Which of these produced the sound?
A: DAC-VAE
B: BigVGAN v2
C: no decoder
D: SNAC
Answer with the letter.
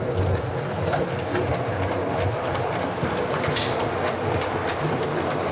C